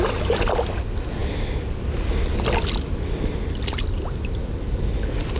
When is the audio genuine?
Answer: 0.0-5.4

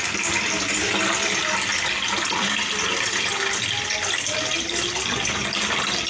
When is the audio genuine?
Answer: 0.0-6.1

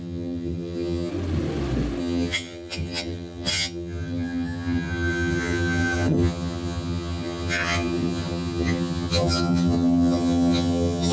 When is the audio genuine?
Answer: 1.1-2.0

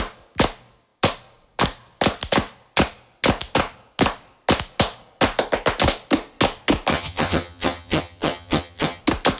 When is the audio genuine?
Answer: 0.0-6.9; 9.0-9.4

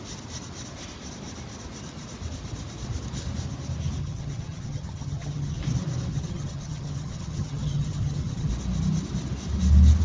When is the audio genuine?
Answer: 0.0-4.0; 5.6-6.1; 8.5-10.0

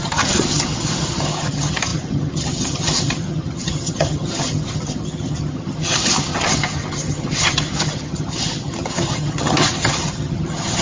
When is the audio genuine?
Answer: none